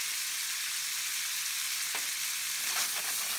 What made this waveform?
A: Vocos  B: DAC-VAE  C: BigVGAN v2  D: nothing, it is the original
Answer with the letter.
D